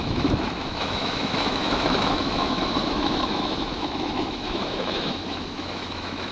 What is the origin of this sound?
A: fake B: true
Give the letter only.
A